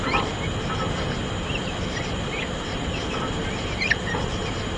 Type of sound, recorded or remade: recorded